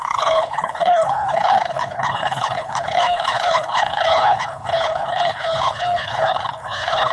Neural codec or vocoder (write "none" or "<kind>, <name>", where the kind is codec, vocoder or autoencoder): codec, HILCodec